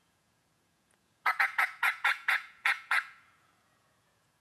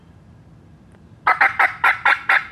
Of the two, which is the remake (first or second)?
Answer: first